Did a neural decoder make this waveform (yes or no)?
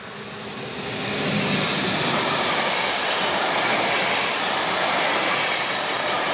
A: no